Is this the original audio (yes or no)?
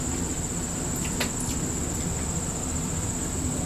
yes